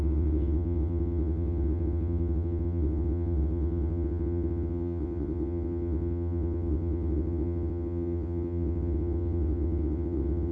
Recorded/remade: remade